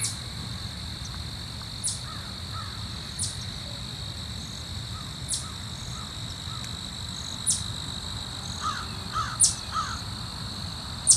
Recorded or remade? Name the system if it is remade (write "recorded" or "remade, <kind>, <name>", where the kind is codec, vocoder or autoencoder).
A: recorded